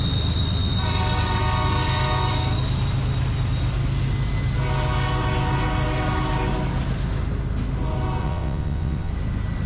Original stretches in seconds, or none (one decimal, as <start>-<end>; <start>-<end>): 0.0-8.2; 9.1-9.7